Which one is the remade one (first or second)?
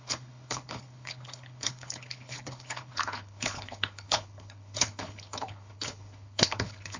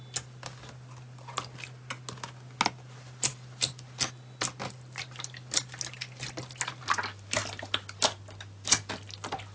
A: first